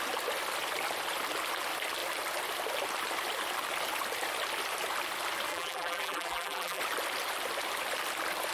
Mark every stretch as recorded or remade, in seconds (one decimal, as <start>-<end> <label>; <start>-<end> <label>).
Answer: 0.0-5.5 recorded; 5.5-6.8 remade; 6.8-8.5 recorded